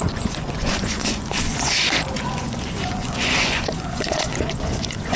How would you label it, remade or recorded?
remade